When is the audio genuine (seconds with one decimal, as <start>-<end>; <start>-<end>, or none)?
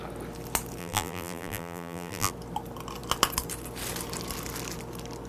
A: 0.0-0.8; 2.3-5.3